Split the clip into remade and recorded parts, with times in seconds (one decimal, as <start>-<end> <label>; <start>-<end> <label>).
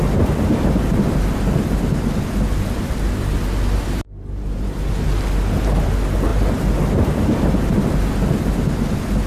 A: 0.0-9.3 recorded